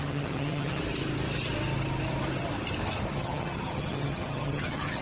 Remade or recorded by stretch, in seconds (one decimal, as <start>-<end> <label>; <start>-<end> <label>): 0.0-0.8 remade; 0.8-3.1 recorded; 3.1-5.0 remade

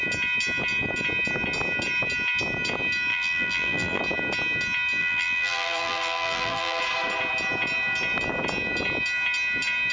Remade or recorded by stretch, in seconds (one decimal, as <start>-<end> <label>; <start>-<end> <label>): 0.0-3.1 recorded; 3.1-4.0 remade; 4.0-5.0 recorded; 5.0-6.8 remade; 6.8-9.9 recorded

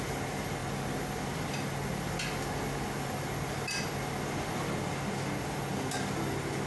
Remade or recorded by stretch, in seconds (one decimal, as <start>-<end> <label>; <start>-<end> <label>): 0.0-6.7 recorded

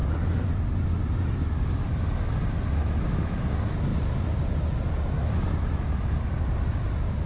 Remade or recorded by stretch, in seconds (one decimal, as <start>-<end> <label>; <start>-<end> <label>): 0.0-7.3 recorded

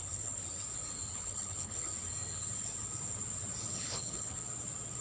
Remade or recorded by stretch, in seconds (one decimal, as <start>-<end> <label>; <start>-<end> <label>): 0.0-0.4 remade; 0.4-1.1 recorded; 1.1-1.9 remade; 1.9-3.7 recorded; 3.7-4.4 remade; 4.4-5.0 recorded

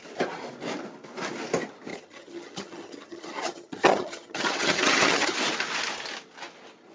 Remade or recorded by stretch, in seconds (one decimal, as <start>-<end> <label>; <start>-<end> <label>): 0.0-1.9 recorded; 1.9-5.4 remade; 5.4-6.9 recorded